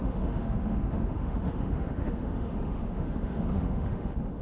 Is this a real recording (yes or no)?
no